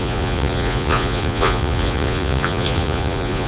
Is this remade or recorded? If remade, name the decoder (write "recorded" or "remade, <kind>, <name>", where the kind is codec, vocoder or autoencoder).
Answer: remade, vocoder, Vocos